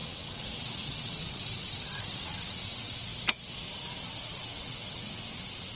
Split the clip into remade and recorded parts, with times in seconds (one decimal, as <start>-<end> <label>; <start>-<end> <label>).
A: 0.0-3.1 remade; 3.1-3.6 recorded; 3.6-5.8 remade

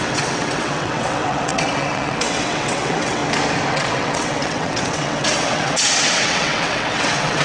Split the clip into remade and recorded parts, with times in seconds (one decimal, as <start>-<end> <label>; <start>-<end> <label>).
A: 0.0-3.2 remade; 3.2-3.7 recorded; 3.7-7.4 remade

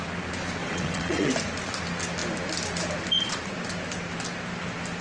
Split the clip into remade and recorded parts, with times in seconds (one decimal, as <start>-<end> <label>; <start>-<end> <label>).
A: 0.0-0.6 recorded; 0.6-1.3 remade; 1.3-5.0 recorded

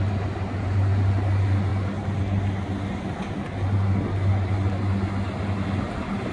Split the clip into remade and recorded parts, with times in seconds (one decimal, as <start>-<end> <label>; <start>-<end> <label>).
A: 0.0-6.3 recorded